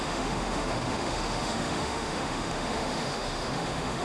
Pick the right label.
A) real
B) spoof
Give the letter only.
B